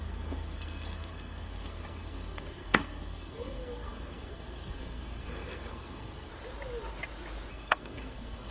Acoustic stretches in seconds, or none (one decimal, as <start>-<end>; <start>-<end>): 6.3-7.5